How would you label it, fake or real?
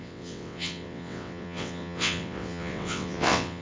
fake